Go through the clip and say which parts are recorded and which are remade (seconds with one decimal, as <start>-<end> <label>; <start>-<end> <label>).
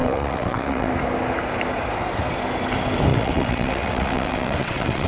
0.0-0.9 remade; 0.9-3.1 recorded; 3.1-5.1 remade